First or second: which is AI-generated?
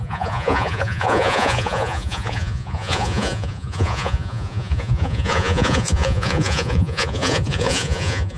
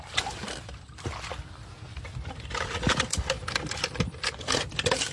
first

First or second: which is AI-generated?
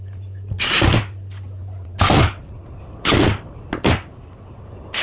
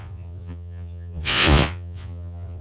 second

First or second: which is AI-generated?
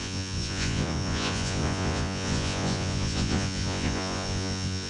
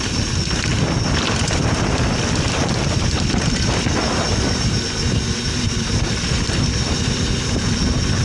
first